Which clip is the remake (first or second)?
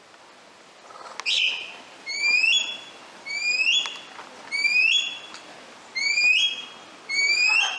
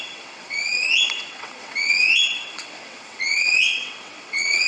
second